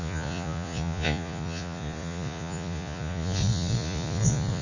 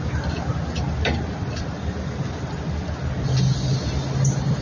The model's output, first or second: first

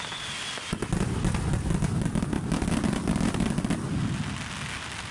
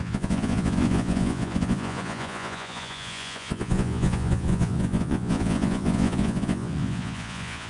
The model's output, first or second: second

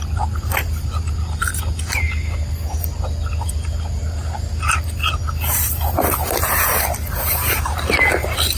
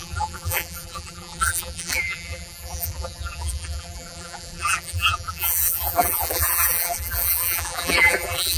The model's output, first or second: second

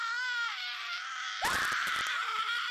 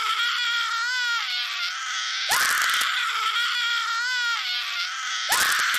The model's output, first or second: first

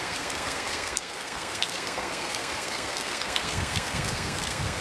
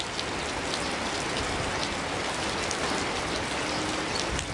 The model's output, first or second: first